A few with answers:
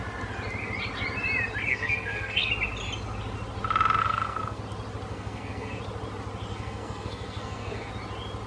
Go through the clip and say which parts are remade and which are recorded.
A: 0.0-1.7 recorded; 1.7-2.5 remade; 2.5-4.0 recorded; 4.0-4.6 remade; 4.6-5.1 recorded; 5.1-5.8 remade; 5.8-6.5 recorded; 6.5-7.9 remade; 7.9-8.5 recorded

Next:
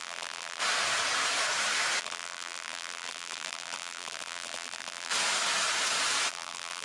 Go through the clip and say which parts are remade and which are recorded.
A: 0.0-0.6 remade; 0.6-2.0 recorded; 2.0-5.1 remade; 5.1-6.3 recorded; 6.3-6.8 remade

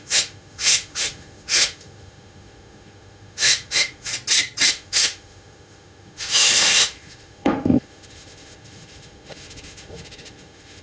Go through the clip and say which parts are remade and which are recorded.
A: 0.0-4.1 remade; 4.1-4.7 recorded; 4.7-10.8 remade

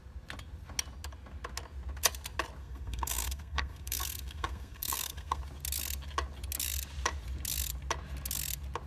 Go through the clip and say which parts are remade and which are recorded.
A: 0.0-2.6 recorded; 2.6-5.4 remade; 5.4-8.9 recorded

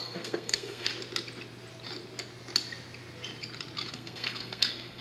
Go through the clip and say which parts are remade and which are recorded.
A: 0.0-0.9 remade; 0.9-3.9 recorded; 3.9-5.0 remade

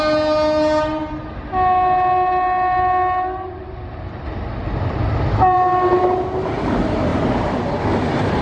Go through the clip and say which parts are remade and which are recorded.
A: 0.0-7.1 recorded; 7.1-7.8 remade; 7.8-8.4 recorded